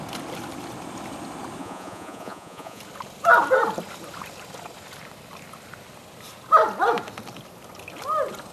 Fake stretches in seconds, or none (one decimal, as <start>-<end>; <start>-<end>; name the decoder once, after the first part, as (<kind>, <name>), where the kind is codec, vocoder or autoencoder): 1.6-2.8 (vocoder, Vocos)